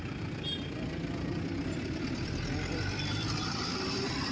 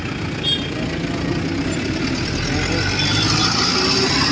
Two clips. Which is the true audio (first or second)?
second